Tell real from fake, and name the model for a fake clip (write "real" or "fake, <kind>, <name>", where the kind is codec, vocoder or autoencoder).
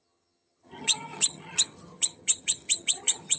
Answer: fake, vocoder, HiFi-GAN